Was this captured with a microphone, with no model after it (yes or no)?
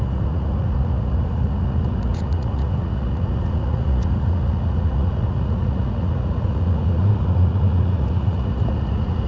no